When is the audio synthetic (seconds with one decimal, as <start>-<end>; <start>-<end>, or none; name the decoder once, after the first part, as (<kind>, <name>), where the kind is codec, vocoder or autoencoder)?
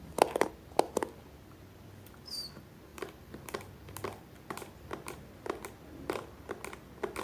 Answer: 2.9-4.9 (vocoder, BigVGAN v2)